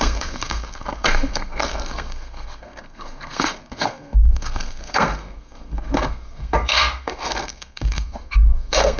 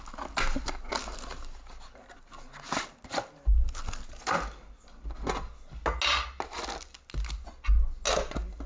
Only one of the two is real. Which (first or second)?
second